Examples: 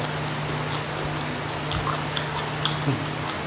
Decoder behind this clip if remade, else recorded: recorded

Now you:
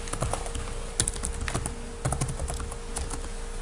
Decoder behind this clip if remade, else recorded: recorded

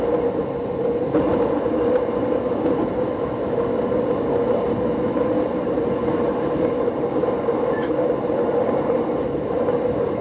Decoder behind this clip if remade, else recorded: recorded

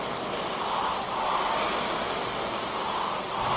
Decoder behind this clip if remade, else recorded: recorded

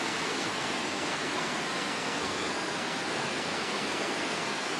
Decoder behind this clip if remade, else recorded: remade, codec, SNAC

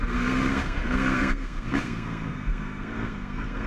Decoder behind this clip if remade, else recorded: remade, codec, SNAC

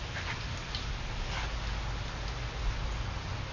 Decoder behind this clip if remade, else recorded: recorded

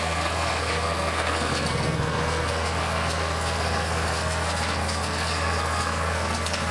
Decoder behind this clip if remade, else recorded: remade, codec, SNAC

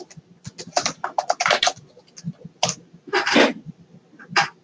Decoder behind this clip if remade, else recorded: recorded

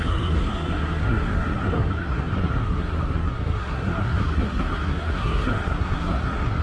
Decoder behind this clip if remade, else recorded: remade, codec, SNAC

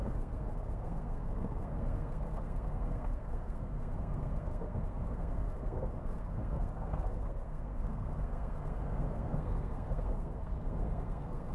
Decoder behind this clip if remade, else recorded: remade, codec, SNAC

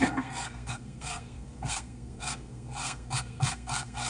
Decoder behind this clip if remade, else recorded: remade, codec, SNAC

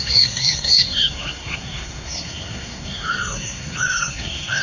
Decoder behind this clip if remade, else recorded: remade, codec, SNAC